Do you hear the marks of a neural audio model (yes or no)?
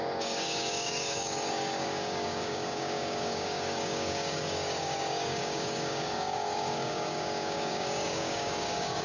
yes